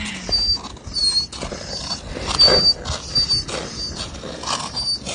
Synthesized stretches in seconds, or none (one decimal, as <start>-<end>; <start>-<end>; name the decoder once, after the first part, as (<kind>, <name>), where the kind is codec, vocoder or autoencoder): none